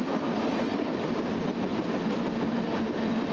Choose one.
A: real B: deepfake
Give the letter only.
A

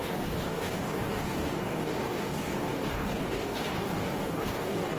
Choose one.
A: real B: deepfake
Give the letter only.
B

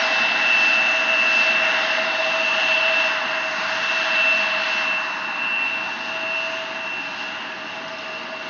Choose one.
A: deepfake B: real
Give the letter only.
B